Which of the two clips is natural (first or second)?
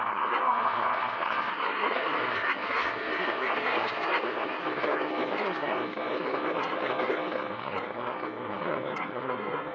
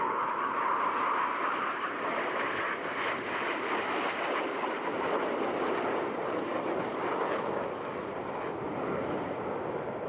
second